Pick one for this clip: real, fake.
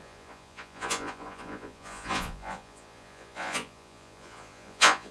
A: fake